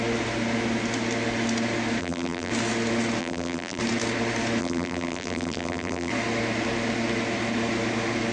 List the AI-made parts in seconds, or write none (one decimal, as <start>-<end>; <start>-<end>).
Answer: 2.0-2.5; 3.2-3.8; 4.6-6.1